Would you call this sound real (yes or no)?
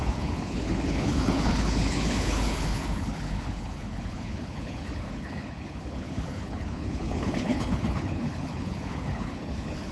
no